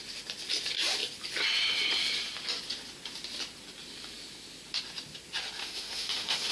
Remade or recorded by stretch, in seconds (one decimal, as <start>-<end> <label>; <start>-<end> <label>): 0.0-5.6 recorded; 5.6-6.5 remade